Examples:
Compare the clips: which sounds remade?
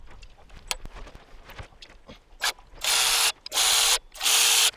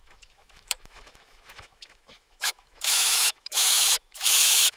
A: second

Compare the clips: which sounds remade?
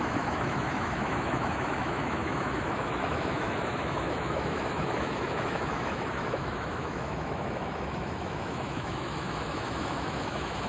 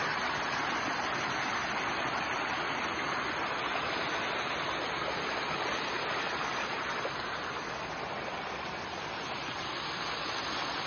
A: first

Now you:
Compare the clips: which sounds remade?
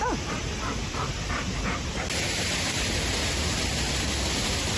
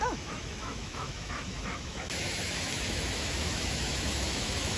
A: second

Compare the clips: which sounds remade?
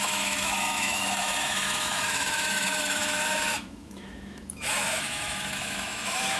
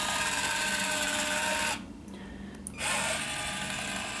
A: first